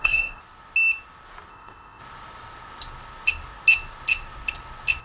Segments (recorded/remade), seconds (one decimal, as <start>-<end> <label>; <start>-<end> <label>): 0.0-0.4 remade; 0.4-1.5 recorded; 1.5-2.0 remade; 2.0-5.0 recorded